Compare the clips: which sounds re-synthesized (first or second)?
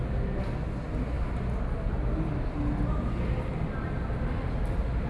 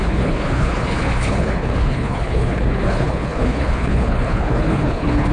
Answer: second